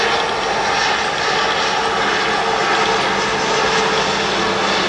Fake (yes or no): no